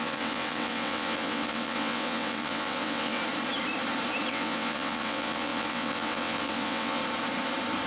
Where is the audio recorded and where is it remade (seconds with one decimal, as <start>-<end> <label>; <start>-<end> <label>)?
0.0-3.2 remade; 3.2-4.3 recorded; 4.3-7.0 remade; 7.0-7.9 recorded

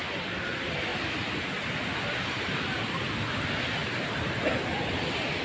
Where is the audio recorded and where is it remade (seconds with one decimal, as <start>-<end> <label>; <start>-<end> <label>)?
0.0-5.4 recorded

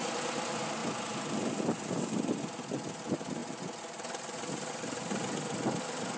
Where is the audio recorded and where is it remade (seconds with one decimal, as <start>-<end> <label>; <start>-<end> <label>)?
0.0-6.2 recorded

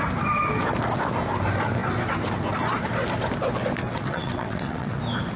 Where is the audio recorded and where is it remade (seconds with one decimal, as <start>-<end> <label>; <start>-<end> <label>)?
0.0-3.8 recorded; 3.8-5.0 remade; 5.0-5.4 recorded

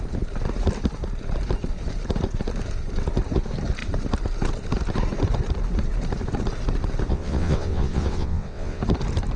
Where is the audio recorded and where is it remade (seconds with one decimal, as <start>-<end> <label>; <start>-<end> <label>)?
0.0-7.1 recorded; 7.1-8.8 remade; 8.8-9.4 recorded

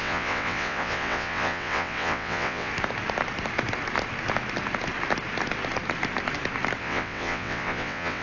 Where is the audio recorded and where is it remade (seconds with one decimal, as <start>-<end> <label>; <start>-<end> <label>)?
0.0-2.7 remade; 2.7-6.8 recorded; 6.8-8.2 remade